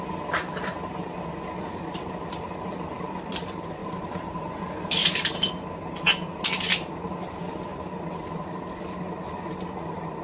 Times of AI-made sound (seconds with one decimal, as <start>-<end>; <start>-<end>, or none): 3.8-4.5